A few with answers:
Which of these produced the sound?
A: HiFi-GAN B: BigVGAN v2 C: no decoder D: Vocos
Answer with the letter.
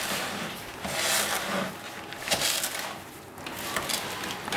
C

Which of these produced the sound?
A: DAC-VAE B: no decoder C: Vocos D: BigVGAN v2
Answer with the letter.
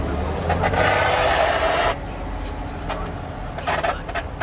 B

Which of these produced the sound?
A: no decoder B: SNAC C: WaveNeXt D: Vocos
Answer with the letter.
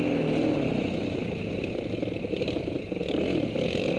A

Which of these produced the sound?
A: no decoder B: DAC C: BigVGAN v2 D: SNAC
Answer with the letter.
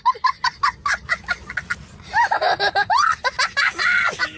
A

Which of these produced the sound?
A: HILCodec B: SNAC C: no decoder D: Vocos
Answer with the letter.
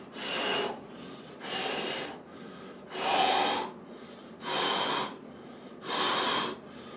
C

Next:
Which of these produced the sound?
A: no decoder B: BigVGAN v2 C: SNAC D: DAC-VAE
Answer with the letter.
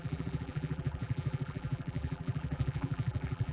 B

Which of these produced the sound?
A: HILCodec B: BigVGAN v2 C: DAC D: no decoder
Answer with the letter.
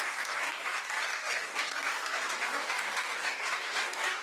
C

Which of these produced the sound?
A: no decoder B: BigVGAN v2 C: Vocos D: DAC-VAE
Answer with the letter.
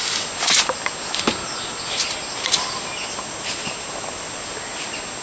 A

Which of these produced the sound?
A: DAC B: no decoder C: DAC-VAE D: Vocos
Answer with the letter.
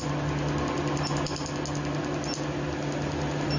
B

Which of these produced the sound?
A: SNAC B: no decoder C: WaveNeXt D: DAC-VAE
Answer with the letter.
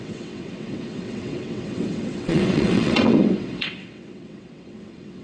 C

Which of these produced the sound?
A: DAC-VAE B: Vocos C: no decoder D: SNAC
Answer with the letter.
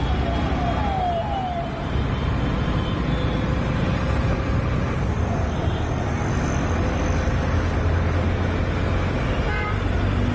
C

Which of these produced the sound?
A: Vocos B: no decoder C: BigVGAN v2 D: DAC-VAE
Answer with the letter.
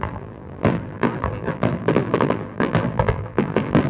C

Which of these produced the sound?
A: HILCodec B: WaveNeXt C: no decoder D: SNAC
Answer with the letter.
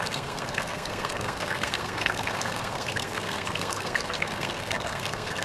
D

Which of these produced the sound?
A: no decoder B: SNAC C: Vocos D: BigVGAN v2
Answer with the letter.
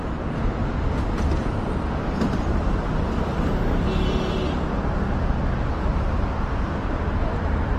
A